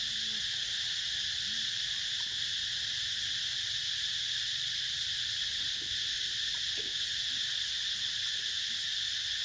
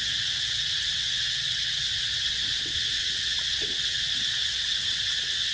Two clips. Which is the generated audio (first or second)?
second